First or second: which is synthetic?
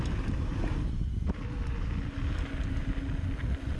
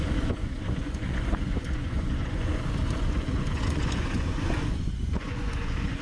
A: second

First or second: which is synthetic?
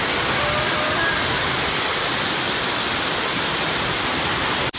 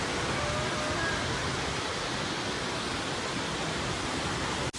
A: first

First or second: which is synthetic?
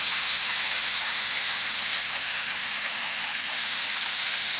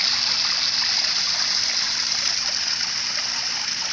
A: first